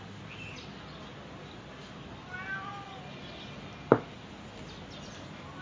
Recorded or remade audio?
recorded